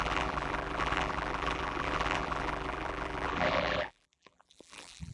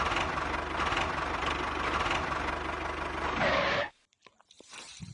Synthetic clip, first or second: first